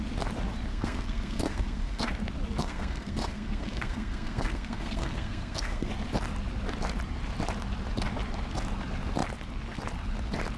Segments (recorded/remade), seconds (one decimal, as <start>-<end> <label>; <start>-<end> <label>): 0.0-0.7 recorded; 0.7-2.1 remade; 2.1-2.6 recorded; 2.6-5.9 remade; 5.9-10.6 recorded